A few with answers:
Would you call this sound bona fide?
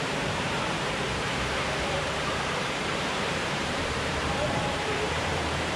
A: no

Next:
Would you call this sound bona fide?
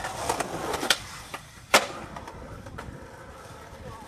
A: no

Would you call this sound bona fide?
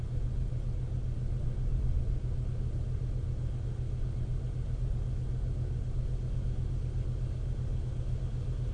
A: yes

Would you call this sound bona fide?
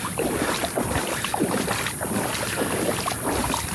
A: no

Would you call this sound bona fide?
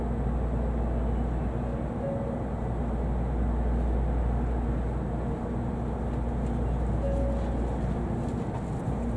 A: yes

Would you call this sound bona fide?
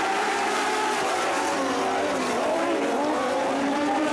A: no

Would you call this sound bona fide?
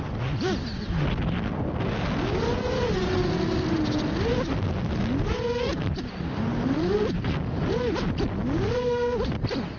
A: yes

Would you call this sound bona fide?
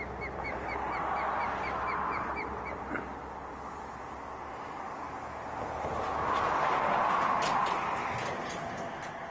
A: yes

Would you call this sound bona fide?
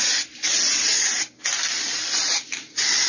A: yes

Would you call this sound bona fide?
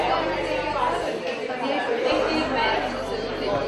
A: yes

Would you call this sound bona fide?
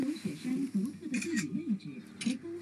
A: yes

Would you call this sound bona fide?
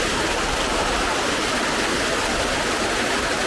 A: yes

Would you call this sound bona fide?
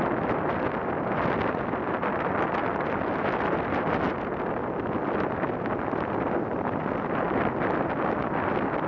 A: yes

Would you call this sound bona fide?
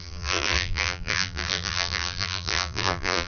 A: no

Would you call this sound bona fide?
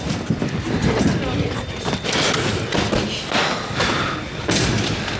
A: yes